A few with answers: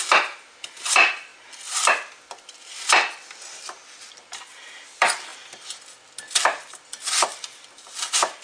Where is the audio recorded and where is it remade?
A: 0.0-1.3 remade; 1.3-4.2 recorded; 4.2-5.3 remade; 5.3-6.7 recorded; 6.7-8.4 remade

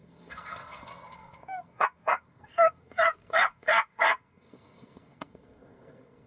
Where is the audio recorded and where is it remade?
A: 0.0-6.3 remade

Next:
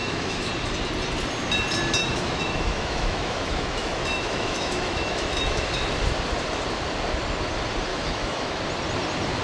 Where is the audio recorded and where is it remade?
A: 0.0-0.5 remade; 0.5-2.0 recorded; 2.0-5.7 remade; 5.7-7.9 recorded; 7.9-8.6 remade; 8.6-9.4 recorded